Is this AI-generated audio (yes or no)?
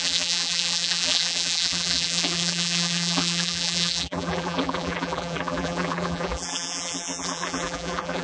yes